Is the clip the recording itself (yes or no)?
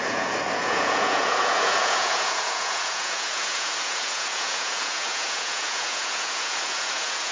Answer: no